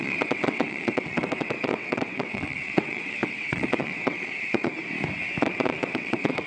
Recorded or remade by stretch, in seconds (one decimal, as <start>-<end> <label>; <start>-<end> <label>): 0.0-4.7 remade; 4.7-5.4 recorded; 5.4-6.5 remade